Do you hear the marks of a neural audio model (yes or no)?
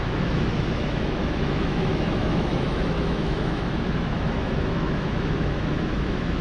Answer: yes